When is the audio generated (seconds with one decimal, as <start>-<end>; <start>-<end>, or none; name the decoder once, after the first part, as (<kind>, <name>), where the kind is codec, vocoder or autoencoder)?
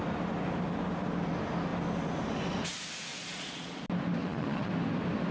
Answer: 3.1-3.8 (vocoder, Vocos); 4.2-4.7